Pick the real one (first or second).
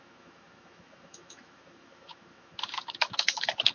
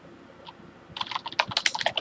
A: second